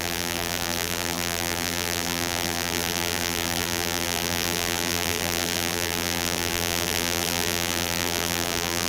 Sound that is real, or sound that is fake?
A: fake